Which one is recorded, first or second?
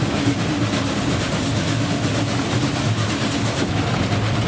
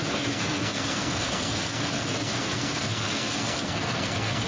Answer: first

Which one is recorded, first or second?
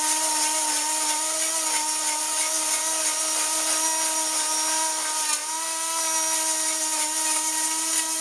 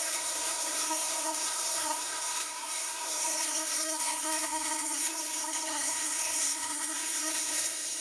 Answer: first